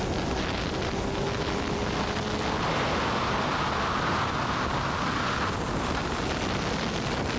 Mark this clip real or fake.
real